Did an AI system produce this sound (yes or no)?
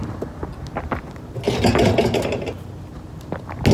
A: no